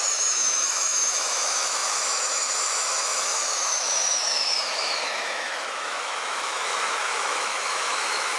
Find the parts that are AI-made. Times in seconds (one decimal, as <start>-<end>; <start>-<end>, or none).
0.0-8.4